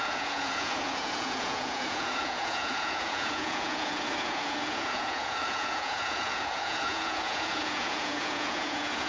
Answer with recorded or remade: remade